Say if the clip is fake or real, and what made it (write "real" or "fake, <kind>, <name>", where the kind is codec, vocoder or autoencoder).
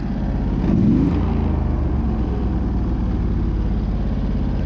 real